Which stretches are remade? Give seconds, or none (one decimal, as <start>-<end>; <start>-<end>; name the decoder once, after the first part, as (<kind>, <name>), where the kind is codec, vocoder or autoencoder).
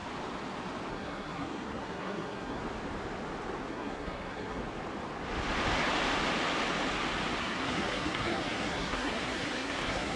0.9-2.6 (codec, SNAC); 3.7-4.6; 7.4-10.2